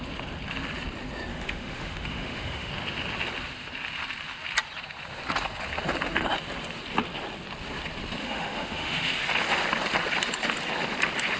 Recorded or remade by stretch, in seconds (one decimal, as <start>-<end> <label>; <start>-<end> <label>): 0.0-1.3 recorded; 1.3-2.7 remade; 2.7-8.2 recorded; 8.2-9.1 remade; 9.1-11.4 recorded